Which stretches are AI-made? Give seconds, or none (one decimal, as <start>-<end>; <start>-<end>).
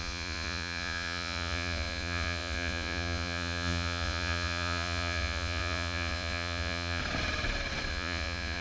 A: 0.0-7.0; 7.9-8.6